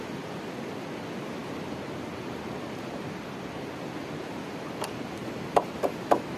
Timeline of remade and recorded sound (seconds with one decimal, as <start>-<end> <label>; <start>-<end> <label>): 0.0-6.4 recorded